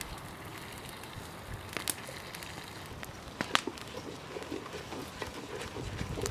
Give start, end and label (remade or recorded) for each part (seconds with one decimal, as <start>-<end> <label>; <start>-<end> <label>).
0.0-6.3 recorded